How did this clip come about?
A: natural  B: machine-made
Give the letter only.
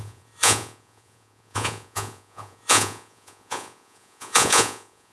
B